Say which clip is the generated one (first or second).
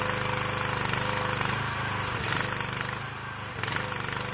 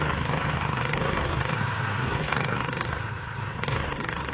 second